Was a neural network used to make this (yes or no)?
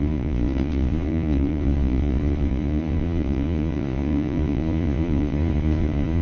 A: yes